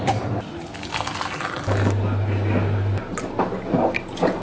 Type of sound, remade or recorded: recorded